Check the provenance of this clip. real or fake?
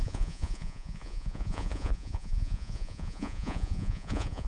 fake